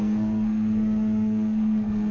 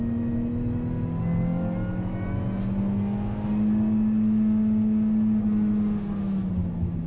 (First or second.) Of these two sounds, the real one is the second